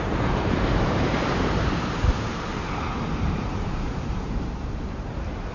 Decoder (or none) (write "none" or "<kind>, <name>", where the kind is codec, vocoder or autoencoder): vocoder, BigVGAN v2